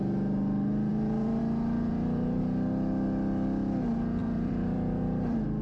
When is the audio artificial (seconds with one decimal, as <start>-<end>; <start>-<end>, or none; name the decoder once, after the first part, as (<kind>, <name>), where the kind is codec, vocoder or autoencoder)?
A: 0.9-1.4 (vocoder, BigVGAN v2); 1.9-2.4; 4.2-5.6